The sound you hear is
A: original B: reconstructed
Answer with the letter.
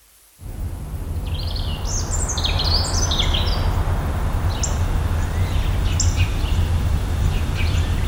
A